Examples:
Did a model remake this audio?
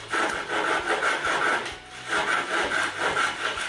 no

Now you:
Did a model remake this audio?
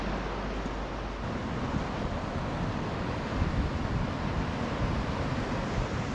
no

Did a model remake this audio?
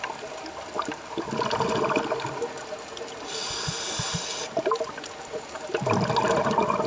no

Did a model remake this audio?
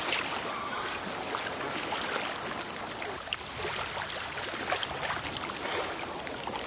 no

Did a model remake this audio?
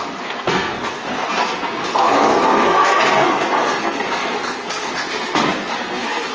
yes